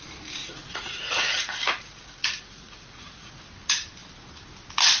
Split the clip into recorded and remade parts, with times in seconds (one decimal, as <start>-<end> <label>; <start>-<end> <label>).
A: 0.0-0.4 recorded; 0.4-3.4 remade; 3.4-5.0 recorded